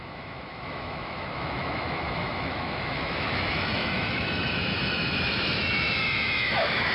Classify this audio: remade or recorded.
remade